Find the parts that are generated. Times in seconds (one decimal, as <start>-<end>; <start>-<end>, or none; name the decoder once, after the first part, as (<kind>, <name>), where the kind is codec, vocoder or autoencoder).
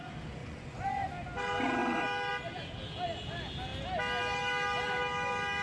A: 0.4-1.1 (vocoder, Vocos)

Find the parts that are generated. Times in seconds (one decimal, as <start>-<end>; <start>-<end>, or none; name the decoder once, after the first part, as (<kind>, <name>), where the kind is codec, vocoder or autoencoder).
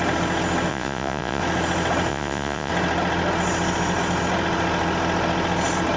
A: 0.7-1.4 (vocoder, Vocos); 2.1-2.7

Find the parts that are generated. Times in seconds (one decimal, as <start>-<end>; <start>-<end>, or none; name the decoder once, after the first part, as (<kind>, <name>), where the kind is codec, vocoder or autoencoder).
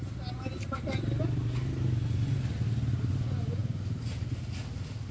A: none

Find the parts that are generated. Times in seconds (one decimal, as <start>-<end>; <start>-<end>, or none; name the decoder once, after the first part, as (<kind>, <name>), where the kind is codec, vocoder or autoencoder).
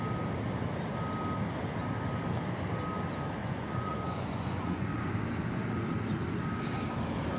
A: 3.4-4.9 (vocoder, Vocos)